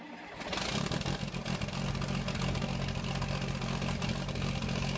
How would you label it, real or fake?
real